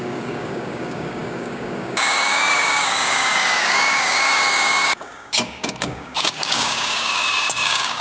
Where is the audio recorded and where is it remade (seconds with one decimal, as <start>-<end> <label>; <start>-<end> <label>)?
0.0-8.0 remade